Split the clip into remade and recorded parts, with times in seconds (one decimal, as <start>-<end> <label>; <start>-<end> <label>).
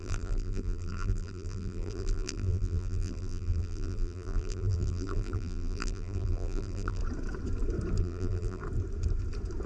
0.0-7.0 remade; 7.0-8.0 recorded; 8.0-8.6 remade; 8.6-9.7 recorded